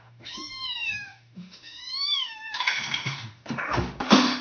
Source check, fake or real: fake